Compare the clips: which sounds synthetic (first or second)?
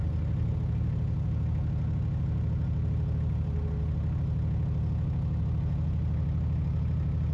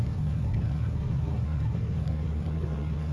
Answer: second